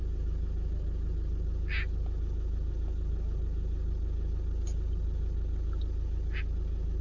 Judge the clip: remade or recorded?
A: recorded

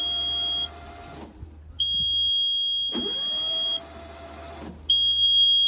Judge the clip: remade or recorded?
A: recorded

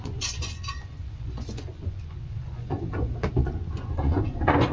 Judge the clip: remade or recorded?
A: remade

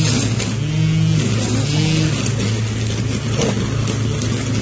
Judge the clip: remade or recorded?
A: recorded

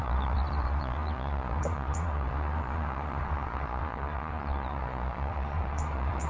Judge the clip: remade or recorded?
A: remade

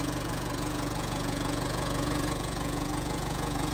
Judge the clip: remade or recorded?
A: remade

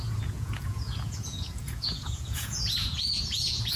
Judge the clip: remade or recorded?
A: remade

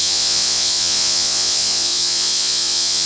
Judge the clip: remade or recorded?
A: remade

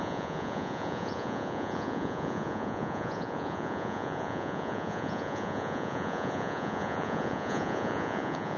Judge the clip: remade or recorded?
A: remade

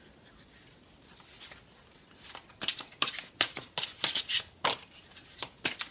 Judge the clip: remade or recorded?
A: recorded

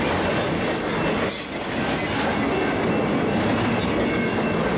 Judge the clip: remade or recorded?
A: recorded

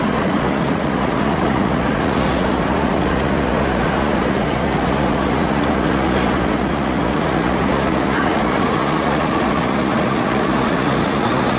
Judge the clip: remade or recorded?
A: remade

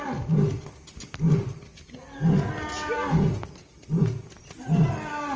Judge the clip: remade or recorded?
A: recorded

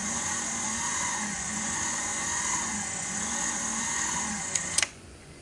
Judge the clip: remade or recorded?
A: remade